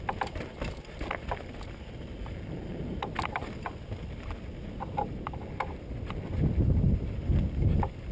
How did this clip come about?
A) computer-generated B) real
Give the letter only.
B